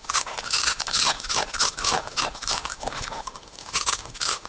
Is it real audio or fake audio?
fake